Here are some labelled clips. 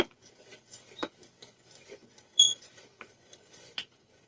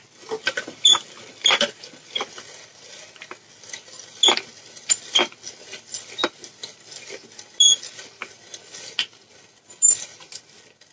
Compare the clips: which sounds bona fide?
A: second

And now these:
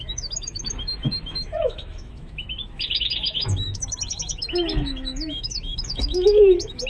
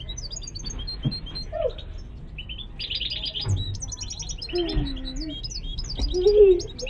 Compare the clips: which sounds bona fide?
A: second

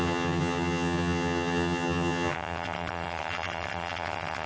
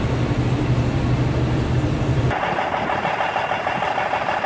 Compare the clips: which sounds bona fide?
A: second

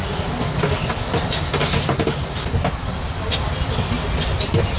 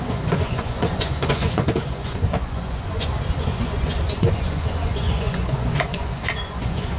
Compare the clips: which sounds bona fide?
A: first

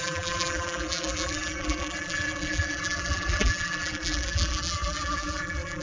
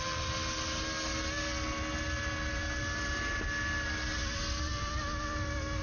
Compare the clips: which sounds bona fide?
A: second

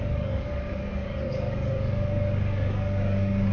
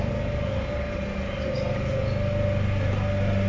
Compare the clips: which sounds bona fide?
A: second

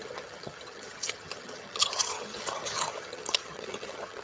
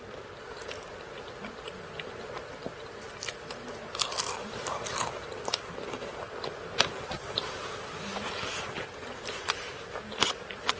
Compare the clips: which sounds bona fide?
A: second